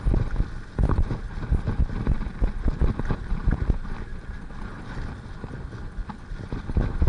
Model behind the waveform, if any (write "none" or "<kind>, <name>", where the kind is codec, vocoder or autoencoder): none